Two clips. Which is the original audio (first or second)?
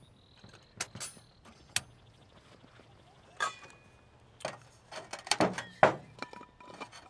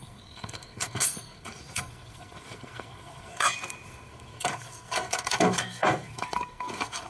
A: first